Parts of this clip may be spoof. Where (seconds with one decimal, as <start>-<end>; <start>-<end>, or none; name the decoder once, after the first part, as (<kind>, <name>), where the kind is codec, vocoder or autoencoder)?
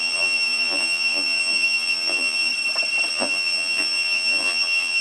0.0-2.5 (vocoder, BigVGAN v2); 3.1-5.0